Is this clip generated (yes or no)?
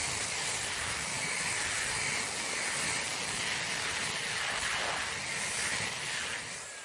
no